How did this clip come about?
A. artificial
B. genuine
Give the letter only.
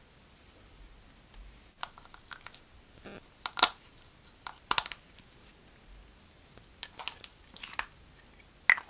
B